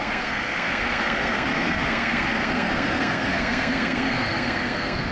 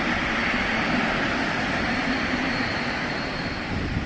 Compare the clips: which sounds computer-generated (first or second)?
first